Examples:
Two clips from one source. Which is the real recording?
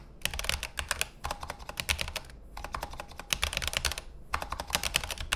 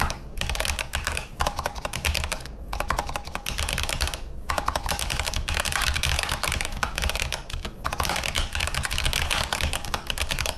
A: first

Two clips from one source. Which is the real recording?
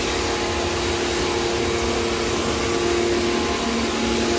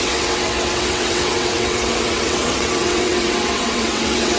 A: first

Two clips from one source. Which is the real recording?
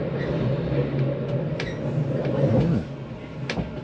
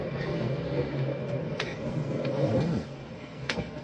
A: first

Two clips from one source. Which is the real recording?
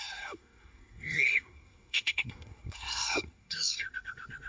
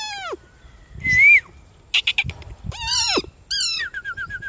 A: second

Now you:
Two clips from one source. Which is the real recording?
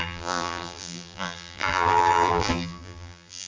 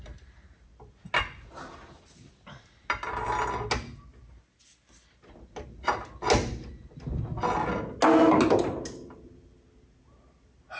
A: second